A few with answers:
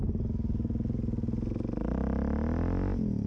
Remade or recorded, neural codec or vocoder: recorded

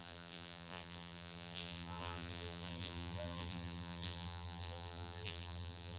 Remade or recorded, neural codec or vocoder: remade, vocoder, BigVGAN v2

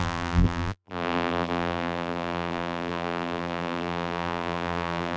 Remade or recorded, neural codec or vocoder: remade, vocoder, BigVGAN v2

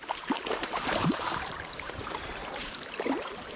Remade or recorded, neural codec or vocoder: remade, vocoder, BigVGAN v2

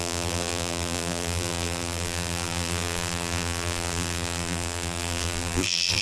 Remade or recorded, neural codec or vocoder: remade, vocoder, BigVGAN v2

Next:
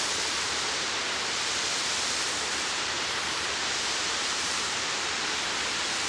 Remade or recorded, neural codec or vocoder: remade, vocoder, BigVGAN v2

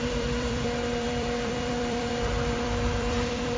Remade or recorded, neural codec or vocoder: remade, vocoder, BigVGAN v2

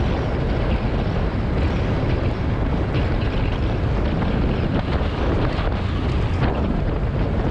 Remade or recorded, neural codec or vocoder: recorded